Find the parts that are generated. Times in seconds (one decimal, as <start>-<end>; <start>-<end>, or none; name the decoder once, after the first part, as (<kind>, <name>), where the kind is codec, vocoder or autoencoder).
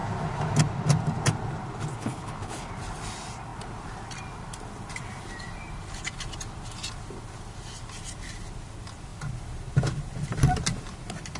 1.9-2.7 (codec, HILCodec)